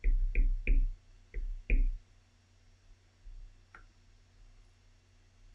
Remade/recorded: recorded